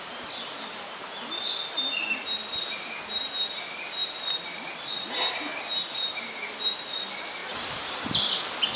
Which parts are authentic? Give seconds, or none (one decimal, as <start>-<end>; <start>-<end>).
0.0-2.4; 2.9-4.0; 4.9-8.8